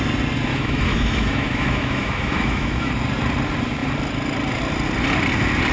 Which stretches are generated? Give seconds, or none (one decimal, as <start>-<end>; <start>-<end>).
0.5-2.9